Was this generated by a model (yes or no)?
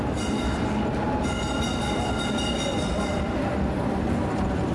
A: no